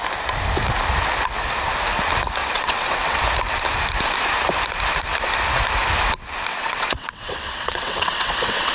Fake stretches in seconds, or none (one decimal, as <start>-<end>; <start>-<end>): 2.4-3.2; 6.5-8.7